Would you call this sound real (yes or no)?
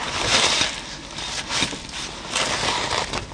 yes